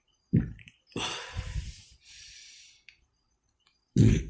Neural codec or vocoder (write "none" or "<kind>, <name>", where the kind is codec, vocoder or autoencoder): vocoder, BigVGAN v2